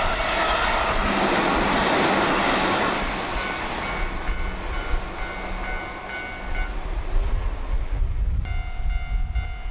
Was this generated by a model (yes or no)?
no